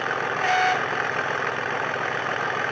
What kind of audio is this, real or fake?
real